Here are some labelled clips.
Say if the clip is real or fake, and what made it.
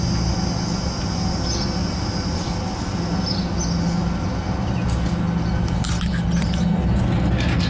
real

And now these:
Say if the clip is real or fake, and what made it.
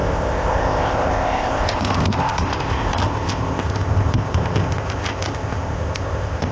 fake, codec, ZipCodec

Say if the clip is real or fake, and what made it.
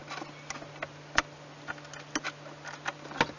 real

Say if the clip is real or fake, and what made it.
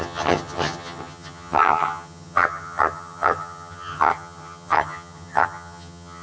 fake, vocoder, HiFi-GAN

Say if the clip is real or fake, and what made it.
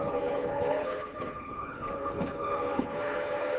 fake, codec, HILCodec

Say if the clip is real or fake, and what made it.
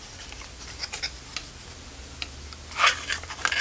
real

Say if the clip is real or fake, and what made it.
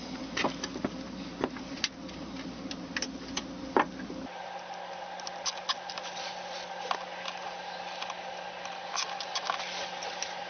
real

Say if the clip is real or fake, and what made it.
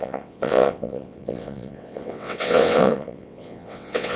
fake, vocoder, WaveNeXt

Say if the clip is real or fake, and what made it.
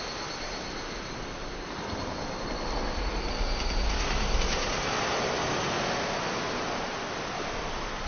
real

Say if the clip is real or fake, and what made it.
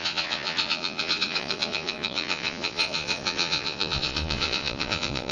fake, vocoder, Vocos